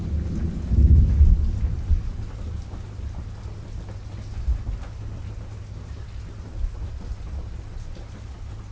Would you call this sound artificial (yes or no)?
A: no